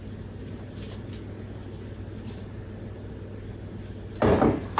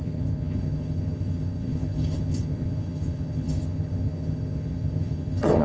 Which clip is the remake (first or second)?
second